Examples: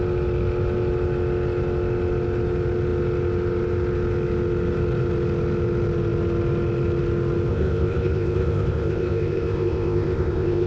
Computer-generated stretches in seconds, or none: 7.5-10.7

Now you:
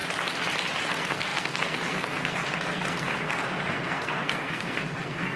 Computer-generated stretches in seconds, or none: 0.9-5.4

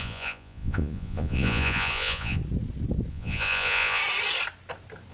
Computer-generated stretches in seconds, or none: 0.0-2.4; 3.1-4.0

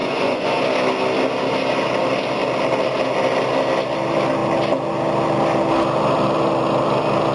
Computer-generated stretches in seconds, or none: 0.0-0.6

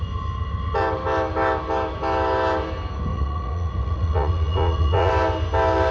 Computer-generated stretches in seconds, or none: 3.1-5.1

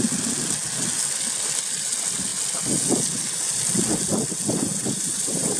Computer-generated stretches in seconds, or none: none

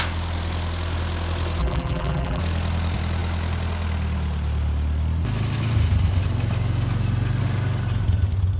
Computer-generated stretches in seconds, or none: 1.6-2.4

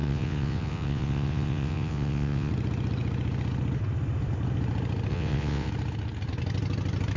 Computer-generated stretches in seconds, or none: 0.0-2.5; 5.1-5.7